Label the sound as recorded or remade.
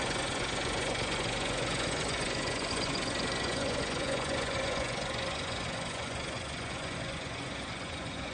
remade